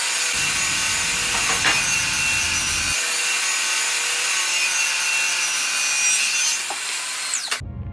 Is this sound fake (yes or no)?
no